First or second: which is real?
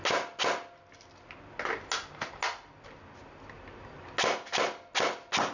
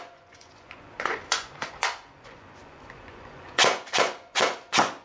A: first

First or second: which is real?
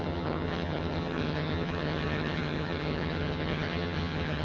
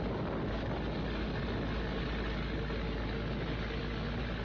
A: second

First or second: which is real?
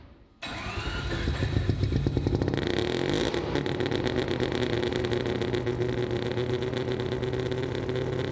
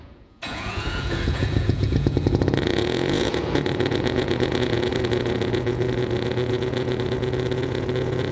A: first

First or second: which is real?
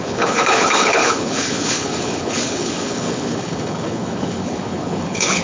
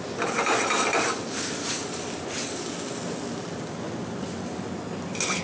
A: second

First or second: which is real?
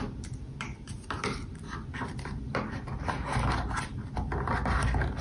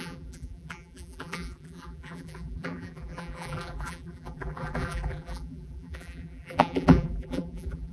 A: first